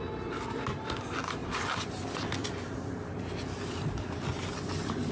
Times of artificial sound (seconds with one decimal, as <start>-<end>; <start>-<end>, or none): 1.4-4.5